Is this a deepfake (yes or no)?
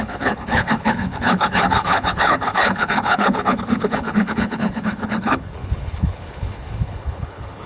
yes